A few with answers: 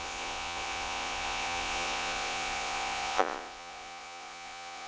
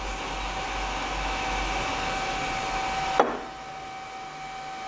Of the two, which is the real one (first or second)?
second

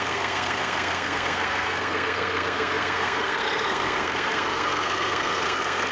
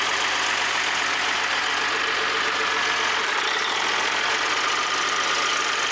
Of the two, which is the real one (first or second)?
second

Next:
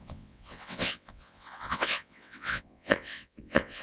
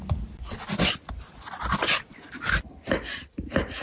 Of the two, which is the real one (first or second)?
second